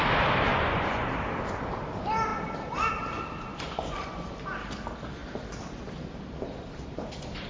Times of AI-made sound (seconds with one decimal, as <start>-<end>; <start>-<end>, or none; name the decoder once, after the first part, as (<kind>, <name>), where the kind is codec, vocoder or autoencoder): 0.5-1.1 (vocoder, Vocos); 3.5-4.3